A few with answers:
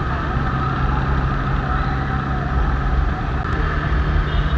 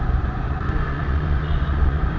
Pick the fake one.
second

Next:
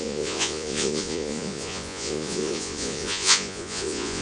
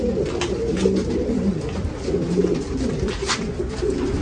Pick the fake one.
first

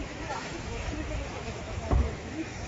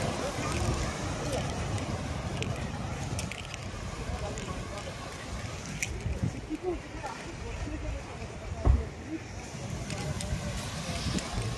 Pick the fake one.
first